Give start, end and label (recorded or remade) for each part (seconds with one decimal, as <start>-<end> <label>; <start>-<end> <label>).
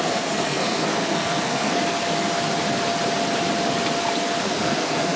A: 0.0-1.8 remade; 1.8-4.4 recorded; 4.4-5.2 remade